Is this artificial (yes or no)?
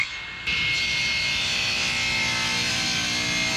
no